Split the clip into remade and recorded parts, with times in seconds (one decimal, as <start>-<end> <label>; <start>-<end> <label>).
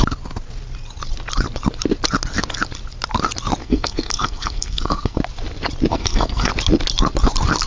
0.0-3.6 recorded; 3.6-5.2 remade; 5.2-5.9 recorded; 5.9-6.5 remade; 6.5-7.7 recorded